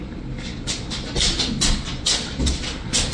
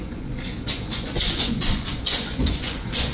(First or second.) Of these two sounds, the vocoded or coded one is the second